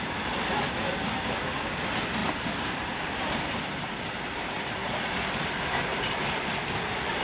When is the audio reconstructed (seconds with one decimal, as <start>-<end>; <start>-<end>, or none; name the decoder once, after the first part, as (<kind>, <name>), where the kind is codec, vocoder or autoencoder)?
2.2-2.7 (vocoder, BigVGAN v2); 4.8-6.8